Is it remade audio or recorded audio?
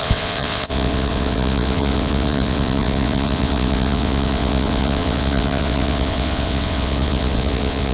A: remade